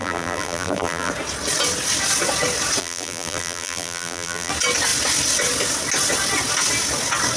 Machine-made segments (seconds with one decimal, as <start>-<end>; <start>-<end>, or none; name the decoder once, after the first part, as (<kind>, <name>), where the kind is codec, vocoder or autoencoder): 0.0-1.1 (vocoder, BigVGAN v2); 2.8-4.5